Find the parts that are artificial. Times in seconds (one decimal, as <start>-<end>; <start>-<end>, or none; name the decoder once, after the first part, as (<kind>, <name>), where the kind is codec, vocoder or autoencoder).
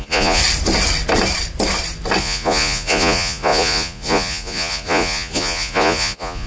0.0-0.4 (vocoder, Vocos); 2.2-6.5